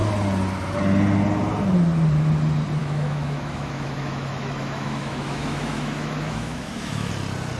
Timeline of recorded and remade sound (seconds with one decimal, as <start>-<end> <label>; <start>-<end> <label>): 0.0-2.8 recorded; 2.8-7.1 remade; 7.1-7.6 recorded